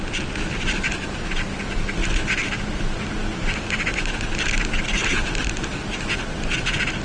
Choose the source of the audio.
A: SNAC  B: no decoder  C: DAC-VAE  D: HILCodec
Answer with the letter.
B